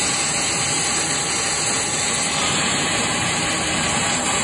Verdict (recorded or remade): remade